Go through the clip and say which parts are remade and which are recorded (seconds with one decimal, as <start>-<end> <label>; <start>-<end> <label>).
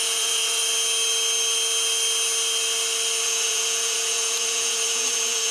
0.0-0.6 remade; 0.6-3.2 recorded; 3.2-5.5 remade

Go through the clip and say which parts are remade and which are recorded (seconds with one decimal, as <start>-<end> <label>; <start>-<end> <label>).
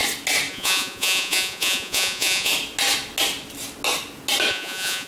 0.0-0.5 recorded; 0.5-2.5 remade; 2.5-4.5 recorded; 4.5-5.1 remade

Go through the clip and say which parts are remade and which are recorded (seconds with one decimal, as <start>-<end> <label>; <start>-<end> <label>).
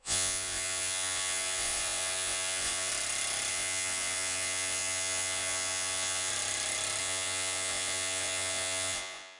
0.0-2.9 remade; 2.9-3.5 recorded; 3.5-6.3 remade; 6.3-7.0 recorded; 7.0-9.4 remade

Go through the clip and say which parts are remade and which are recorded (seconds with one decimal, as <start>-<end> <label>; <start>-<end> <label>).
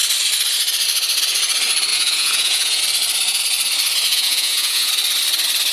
0.0-1.9 recorded; 1.9-2.8 remade; 2.8-4.1 recorded; 4.1-4.9 remade; 4.9-5.7 recorded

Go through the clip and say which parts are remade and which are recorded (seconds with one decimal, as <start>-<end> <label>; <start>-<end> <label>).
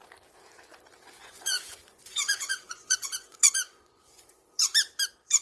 0.0-1.2 recorded; 1.2-4.4 remade; 4.4-5.4 recorded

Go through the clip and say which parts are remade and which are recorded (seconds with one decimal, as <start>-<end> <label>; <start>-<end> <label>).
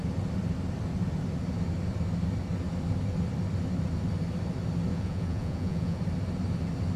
0.0-4.9 recorded; 4.9-6.0 remade; 6.0-7.0 recorded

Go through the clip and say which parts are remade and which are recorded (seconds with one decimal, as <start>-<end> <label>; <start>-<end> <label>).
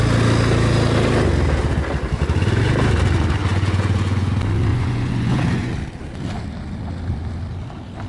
0.0-3.5 recorded; 3.5-4.3 remade; 4.3-4.7 recorded; 4.7-5.7 remade; 5.7-8.1 recorded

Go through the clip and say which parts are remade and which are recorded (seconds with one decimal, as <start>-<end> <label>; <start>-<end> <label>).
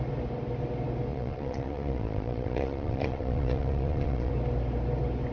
0.0-1.1 recorded; 1.1-4.3 remade; 4.3-5.3 recorded